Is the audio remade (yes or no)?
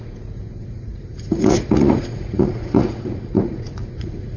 yes